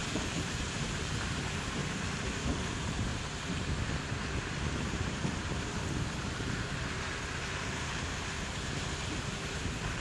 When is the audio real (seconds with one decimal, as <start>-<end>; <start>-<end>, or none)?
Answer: 1.8-2.6; 3.1-3.8